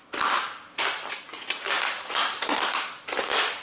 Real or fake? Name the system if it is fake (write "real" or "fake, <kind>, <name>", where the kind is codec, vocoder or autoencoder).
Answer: real